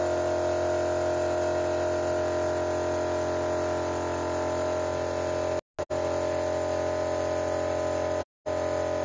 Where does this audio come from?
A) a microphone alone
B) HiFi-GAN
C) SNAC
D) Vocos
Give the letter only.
A